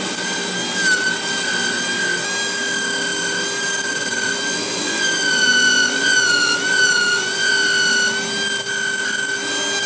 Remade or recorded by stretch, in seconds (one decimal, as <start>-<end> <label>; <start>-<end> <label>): 0.0-3.9 recorded; 3.9-7.5 remade; 7.5-9.9 recorded

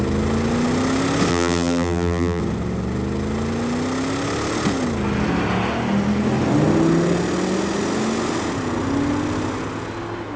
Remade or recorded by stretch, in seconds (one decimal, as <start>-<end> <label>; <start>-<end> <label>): 0.0-1.3 recorded; 1.3-2.4 remade; 2.4-10.4 recorded

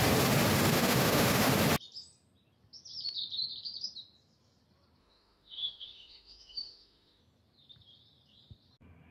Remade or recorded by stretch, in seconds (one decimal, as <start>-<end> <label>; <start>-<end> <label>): 0.0-0.7 recorded; 0.7-1.5 remade; 1.5-5.0 recorded; 5.0-7.2 remade; 7.2-9.1 recorded

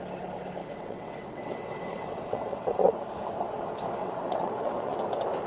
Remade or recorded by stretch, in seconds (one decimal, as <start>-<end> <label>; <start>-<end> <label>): 0.0-0.6 recorded; 0.6-2.9 remade; 2.9-4.0 recorded; 4.0-5.0 remade; 5.0-5.5 recorded

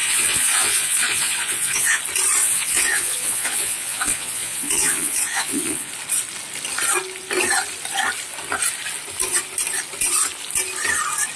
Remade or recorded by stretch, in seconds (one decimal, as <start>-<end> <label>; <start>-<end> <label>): 0.0-2.0 remade; 2.0-2.4 recorded; 2.4-5.9 remade; 5.9-11.4 recorded

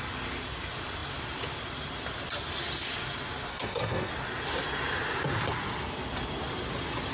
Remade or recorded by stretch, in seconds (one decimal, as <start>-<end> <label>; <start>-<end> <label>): 0.0-3.5 recorded; 3.5-4.1 remade; 4.1-7.1 recorded

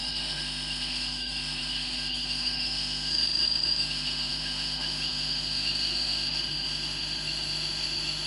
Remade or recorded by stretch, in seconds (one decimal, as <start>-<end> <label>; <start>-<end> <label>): 0.0-8.3 remade

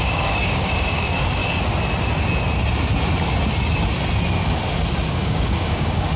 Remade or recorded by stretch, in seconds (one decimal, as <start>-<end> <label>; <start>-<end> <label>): 0.0-1.4 remade; 1.4-5.1 recorded; 5.1-6.2 remade